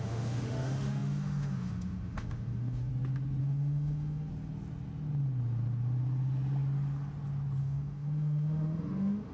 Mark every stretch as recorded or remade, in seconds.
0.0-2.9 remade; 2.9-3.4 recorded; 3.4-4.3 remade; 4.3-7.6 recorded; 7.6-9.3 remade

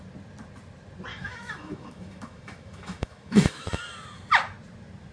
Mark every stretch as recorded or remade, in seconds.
0.0-1.1 recorded; 1.1-3.8 remade; 3.8-5.1 recorded

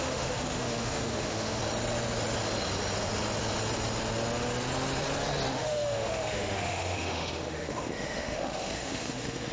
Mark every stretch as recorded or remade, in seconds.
0.0-1.6 remade; 1.6-5.5 recorded; 5.5-9.5 remade

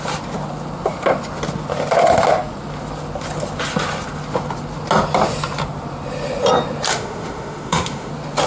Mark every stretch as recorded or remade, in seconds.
0.0-6.9 recorded; 6.9-8.1 remade; 8.1-8.5 recorded

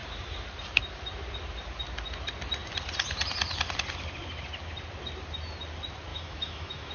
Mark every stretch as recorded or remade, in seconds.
0.0-6.1 recorded; 6.1-6.9 remade

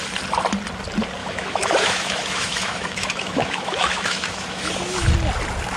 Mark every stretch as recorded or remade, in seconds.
0.0-1.2 recorded; 1.2-4.7 remade; 4.7-5.8 recorded

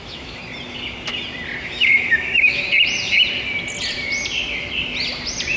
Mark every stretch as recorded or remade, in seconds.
0.0-0.4 remade; 0.4-1.6 recorded; 1.6-2.7 remade; 2.7-5.6 recorded

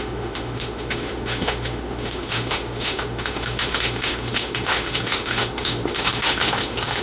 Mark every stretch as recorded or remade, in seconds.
0.0-7.0 remade